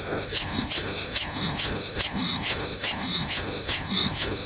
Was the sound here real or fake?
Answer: fake